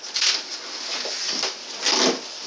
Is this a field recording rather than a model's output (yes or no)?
yes